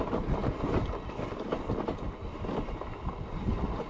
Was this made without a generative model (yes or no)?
yes